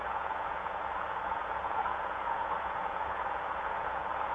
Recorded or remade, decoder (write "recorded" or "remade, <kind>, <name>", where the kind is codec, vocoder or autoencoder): remade, vocoder, Vocos